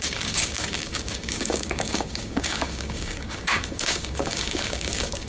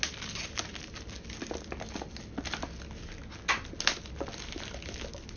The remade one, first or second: first